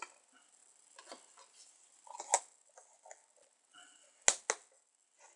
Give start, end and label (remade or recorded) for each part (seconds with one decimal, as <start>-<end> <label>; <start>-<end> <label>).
0.0-5.4 recorded